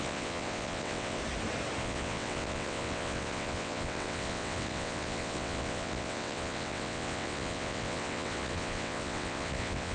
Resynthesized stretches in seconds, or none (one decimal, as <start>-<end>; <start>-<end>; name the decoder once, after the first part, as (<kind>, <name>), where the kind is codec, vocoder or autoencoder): 0.0-1.2 (vocoder, WaveNeXt); 1.8-9.9